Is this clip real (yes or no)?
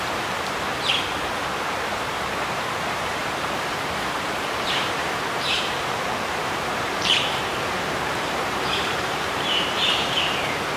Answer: no